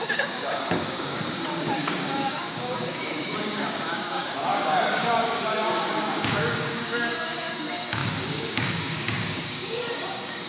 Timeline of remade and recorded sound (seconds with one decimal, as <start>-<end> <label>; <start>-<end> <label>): 0.0-10.5 remade